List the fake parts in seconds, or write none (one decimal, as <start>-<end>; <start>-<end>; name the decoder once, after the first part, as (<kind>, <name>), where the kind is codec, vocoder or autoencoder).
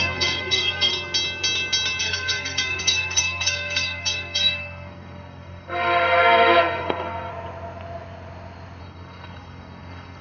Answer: 0.0-0.9 (codec, SNAC); 2.0-7.3; 8.8-10.2